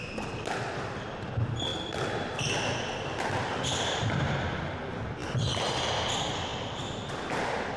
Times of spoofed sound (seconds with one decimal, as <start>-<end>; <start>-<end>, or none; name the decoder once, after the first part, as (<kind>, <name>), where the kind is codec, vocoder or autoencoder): none